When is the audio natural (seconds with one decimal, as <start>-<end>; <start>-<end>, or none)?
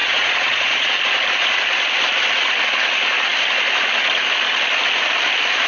1.0-5.7